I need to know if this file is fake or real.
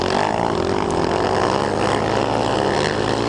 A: real